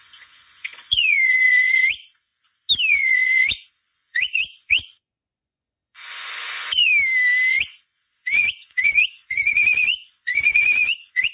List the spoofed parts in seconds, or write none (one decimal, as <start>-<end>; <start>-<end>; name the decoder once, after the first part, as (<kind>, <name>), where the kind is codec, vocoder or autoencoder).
0.0-2.3 (vocoder, Vocos); 2.9-6.9; 7.5-11.3